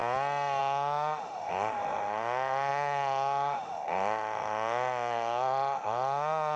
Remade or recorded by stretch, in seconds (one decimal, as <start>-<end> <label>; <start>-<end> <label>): 0.0-0.6 recorded; 0.6-6.6 remade